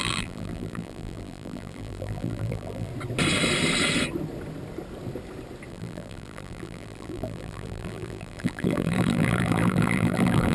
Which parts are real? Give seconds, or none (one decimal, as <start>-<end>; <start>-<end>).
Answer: 2.9-5.7